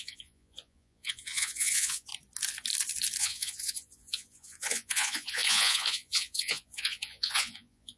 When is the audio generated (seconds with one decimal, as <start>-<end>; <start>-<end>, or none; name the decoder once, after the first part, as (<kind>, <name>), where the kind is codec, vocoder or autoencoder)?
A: 0.0-2.1 (vocoder, Vocos); 3.2-8.0